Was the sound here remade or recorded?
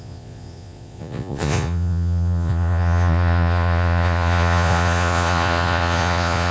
remade